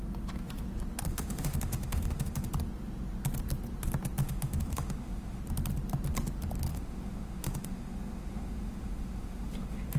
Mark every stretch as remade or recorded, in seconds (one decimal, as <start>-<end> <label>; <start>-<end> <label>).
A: 0.0-1.1 recorded; 1.1-2.5 remade; 2.5-4.2 recorded; 4.2-5.4 remade; 5.4-6.7 recorded; 6.7-10.0 remade